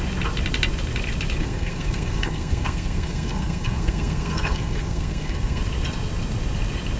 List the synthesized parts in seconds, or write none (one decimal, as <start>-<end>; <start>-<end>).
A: 1.4-5.6